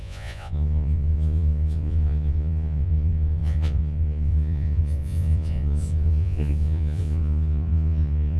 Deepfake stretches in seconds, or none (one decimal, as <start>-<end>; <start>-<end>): 0.0-8.4